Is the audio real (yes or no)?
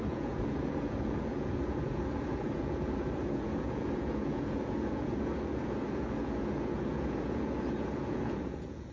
no